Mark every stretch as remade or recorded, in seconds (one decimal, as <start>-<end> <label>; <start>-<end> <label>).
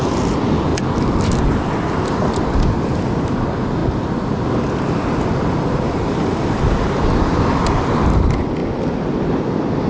0.0-9.9 recorded